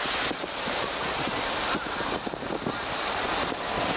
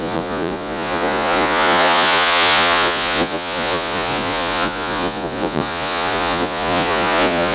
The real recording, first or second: first